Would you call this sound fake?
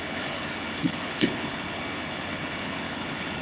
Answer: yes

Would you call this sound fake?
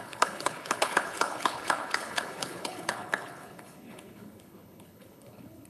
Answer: yes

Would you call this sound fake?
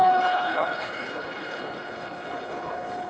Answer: yes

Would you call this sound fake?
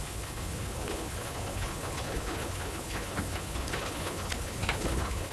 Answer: yes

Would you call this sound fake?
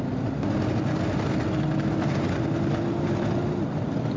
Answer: no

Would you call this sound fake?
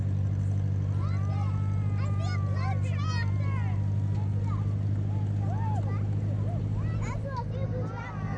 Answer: no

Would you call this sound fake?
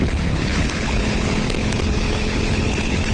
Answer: yes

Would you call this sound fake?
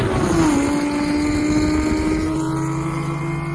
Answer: no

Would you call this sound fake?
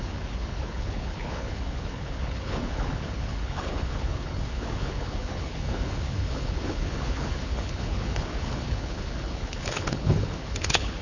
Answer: yes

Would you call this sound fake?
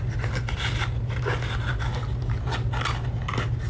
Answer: no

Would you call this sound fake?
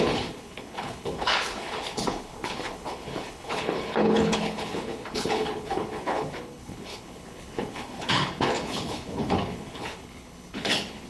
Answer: yes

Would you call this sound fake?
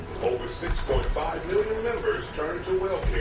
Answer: no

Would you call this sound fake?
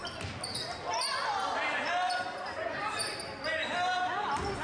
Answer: no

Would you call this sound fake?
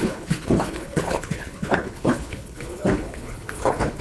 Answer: yes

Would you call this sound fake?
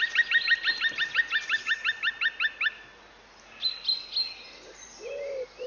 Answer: no